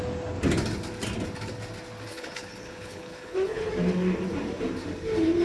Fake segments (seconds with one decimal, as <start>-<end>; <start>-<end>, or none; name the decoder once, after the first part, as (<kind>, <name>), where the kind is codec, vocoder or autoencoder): 2.1-3.7 (codec, HILCodec)